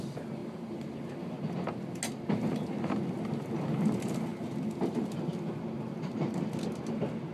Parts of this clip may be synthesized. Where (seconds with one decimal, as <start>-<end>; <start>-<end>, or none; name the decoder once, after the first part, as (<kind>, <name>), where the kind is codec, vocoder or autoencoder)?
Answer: none